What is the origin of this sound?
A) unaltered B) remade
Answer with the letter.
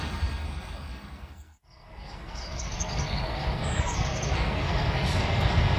B